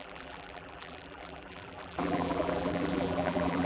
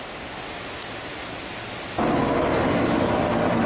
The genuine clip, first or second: second